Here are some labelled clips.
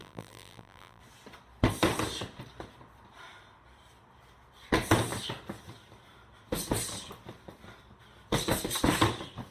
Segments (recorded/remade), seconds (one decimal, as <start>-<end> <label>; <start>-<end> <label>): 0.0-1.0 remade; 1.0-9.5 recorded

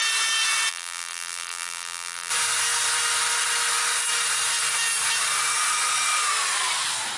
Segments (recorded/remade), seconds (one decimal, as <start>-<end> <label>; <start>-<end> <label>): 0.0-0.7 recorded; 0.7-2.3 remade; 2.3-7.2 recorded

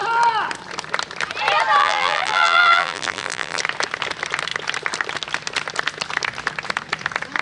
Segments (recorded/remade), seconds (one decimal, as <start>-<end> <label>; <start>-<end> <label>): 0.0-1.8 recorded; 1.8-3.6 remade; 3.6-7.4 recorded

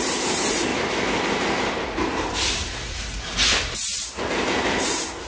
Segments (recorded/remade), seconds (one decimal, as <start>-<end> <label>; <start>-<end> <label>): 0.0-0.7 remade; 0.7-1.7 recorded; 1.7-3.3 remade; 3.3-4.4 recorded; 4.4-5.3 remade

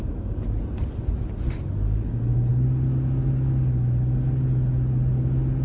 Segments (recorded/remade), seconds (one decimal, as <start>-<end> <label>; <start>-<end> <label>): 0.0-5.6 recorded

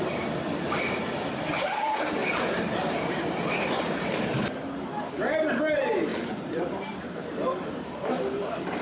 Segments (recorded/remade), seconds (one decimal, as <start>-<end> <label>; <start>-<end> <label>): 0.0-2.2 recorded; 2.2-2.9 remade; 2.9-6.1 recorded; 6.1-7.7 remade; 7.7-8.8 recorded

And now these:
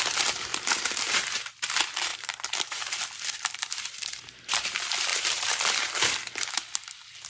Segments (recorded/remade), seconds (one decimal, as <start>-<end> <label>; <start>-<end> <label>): 0.0-0.5 recorded; 0.5-1.5 remade; 1.5-2.1 recorded; 2.1-3.1 remade; 3.1-5.1 recorded; 5.1-5.6 remade; 5.6-7.3 recorded

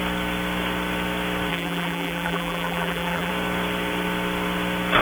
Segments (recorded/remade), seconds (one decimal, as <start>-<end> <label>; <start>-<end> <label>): 0.0-1.5 recorded; 1.5-3.3 remade; 3.3-5.0 recorded